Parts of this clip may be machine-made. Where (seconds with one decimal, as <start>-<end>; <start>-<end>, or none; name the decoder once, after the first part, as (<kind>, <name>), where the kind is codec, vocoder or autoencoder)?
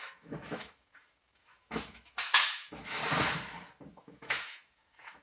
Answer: 0.0-3.0 (autoencoder, DAC-VAE); 3.9-5.2